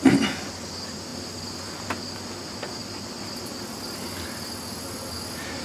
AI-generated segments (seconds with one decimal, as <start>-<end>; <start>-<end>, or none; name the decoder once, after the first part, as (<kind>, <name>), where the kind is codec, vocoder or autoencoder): none